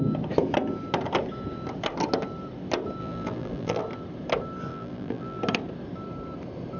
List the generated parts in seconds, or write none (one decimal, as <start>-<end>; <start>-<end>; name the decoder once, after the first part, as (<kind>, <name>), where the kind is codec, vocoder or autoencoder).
3.0-3.8 (vocoder, BigVGAN v2); 4.7-5.4